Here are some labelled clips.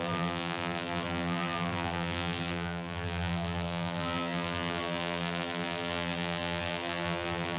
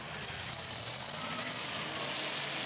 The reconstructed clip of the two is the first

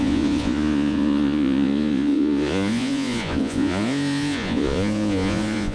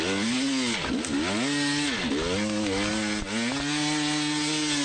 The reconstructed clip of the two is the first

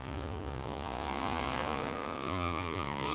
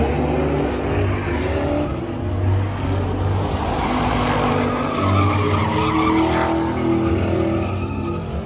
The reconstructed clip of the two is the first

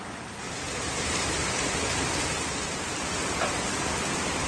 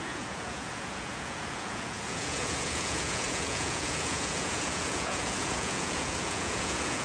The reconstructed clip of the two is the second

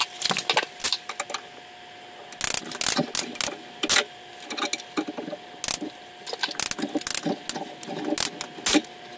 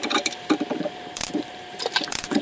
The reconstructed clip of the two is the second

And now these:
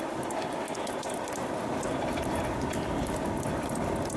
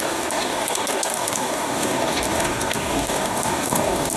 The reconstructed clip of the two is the second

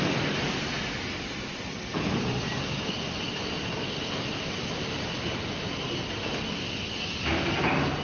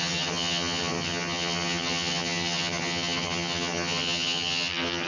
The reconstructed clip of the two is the second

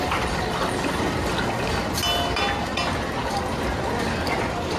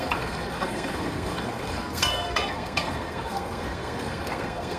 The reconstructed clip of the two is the second